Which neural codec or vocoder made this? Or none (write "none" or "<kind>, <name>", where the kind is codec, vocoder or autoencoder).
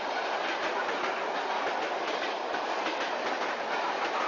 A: none